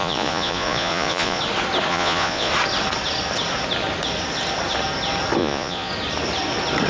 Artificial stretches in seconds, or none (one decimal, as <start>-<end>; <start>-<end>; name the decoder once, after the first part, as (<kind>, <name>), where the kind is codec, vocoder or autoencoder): 0.0-1.4 (vocoder, Vocos); 1.9-2.5; 5.4-5.9